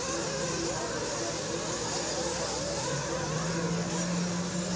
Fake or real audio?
real